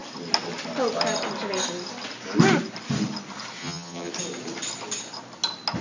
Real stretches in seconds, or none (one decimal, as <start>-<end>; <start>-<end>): 0.0-3.6; 4.1-5.8